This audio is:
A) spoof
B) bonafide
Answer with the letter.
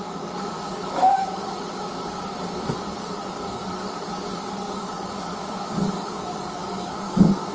A